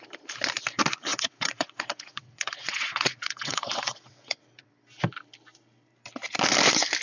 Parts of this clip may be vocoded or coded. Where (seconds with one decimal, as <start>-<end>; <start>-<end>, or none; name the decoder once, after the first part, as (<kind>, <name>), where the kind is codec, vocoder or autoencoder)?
1.1-4.7 (vocoder, WaveNeXt)